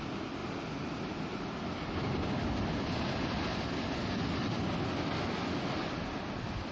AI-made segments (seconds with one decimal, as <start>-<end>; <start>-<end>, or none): none

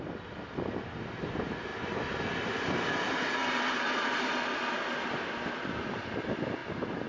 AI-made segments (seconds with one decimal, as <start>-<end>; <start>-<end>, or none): none

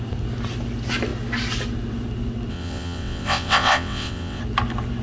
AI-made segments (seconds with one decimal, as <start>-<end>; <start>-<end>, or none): 2.5-4.4